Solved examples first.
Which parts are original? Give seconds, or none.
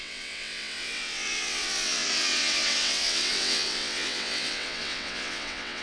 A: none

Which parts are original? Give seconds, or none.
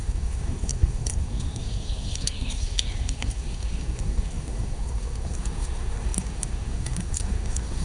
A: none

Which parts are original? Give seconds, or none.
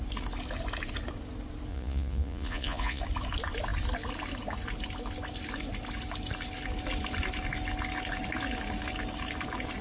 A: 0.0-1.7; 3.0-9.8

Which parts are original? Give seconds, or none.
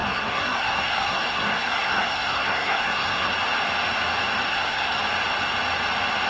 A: 3.3-4.5; 5.0-6.3